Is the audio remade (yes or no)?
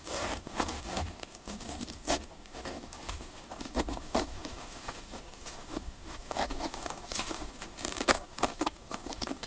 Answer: yes